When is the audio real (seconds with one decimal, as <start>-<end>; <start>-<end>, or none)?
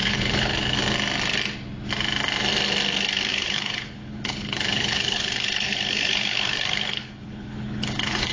0.8-3.3